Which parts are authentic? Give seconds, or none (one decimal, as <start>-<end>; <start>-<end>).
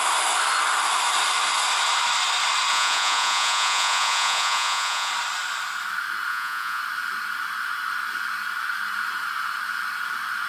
0.0-2.7; 5.1-6.3; 6.8-10.5